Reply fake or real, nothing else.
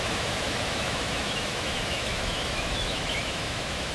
fake